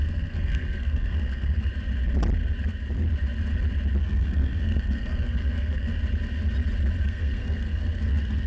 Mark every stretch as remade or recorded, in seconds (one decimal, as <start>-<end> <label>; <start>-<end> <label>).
0.0-1.7 remade; 1.7-4.0 recorded; 4.0-5.9 remade; 5.9-7.0 recorded; 7.0-8.5 remade